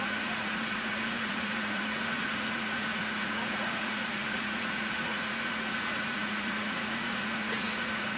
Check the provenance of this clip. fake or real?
fake